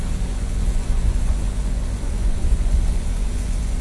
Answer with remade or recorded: remade